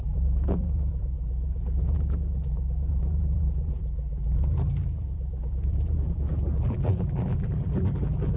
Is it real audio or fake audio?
fake